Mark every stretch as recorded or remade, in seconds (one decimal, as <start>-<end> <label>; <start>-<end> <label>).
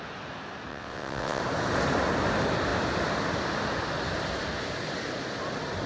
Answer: 0.0-0.7 recorded; 0.7-1.4 remade; 1.4-5.9 recorded